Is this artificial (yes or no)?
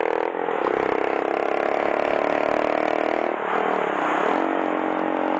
no